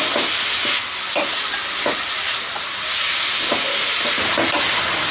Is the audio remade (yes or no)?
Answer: no